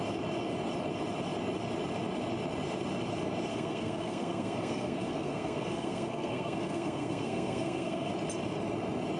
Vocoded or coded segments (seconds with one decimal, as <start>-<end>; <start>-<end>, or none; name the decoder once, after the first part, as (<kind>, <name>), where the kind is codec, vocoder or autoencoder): 3.5-8.1 (codec, SNAC)